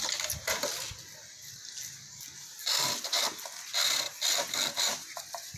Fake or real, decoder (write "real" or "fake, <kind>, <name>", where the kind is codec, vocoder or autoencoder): real